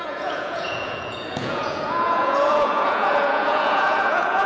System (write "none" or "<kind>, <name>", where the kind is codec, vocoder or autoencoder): vocoder, Vocos